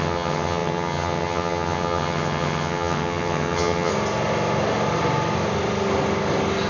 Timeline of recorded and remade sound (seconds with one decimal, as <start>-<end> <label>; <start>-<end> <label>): 0.0-3.9 remade; 3.9-6.7 recorded